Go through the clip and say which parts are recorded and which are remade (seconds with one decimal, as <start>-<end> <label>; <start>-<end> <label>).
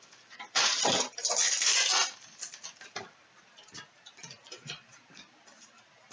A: 0.0-6.1 remade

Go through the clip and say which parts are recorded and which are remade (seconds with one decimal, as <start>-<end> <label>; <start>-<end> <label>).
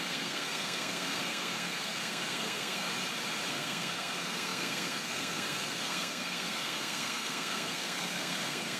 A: 0.0-2.9 remade; 2.9-3.5 recorded; 3.5-8.8 remade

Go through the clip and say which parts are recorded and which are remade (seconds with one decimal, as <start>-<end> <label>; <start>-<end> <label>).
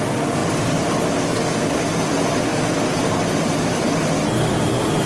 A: 0.0-5.1 recorded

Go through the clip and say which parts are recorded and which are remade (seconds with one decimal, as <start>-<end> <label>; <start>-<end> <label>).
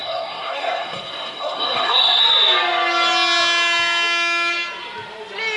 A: 0.0-2.2 remade; 2.2-5.6 recorded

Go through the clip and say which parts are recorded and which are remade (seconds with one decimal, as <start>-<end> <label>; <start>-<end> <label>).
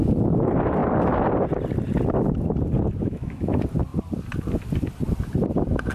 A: 0.0-3.0 recorded; 3.0-3.5 remade; 3.5-5.9 recorded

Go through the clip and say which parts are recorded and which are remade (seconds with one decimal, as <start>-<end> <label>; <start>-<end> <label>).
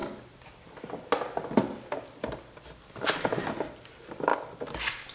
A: 0.0-5.1 recorded